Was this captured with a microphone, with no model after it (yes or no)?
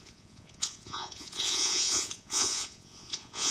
no